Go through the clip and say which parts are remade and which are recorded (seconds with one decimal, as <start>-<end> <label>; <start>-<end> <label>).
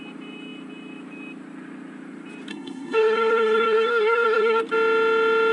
0.0-2.5 recorded; 2.5-4.6 remade; 4.6-5.5 recorded